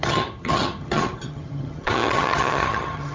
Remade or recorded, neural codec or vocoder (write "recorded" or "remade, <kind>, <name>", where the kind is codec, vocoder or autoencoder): remade, vocoder, HiFi-GAN